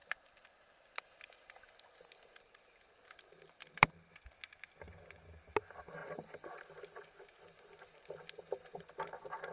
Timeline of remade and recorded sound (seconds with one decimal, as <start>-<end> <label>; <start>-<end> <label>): 0.0-9.5 recorded

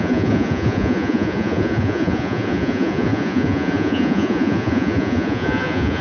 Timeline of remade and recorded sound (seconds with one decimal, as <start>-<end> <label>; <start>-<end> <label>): 0.0-6.0 remade

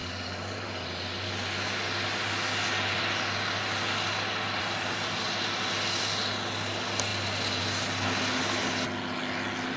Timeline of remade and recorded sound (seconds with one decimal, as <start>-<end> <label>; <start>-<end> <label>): 0.0-9.8 recorded